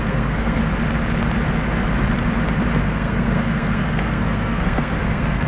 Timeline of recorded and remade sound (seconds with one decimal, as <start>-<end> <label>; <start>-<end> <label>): 0.0-0.6 remade; 0.6-2.8 recorded; 2.8-5.5 remade